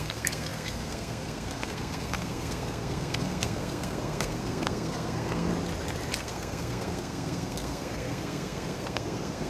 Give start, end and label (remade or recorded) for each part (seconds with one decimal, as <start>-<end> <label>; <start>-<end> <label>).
0.0-5.5 remade; 5.5-6.2 recorded; 6.2-9.5 remade